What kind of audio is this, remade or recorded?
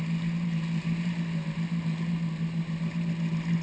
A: recorded